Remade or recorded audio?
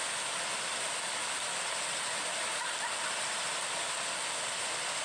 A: recorded